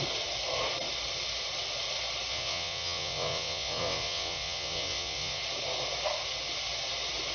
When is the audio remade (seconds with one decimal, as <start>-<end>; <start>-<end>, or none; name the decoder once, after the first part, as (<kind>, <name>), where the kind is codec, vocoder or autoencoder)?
2.3-5.4 (vocoder, WaveNeXt)